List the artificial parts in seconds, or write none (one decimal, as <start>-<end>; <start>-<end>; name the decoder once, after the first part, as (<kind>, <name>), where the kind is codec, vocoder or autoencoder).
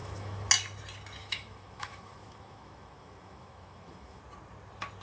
0.0-0.5 (autoencoder, DAC-VAE); 1.2-4.2